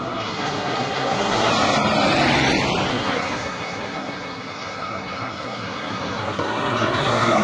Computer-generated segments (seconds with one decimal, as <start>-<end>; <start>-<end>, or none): 0.0-1.5; 2.9-7.4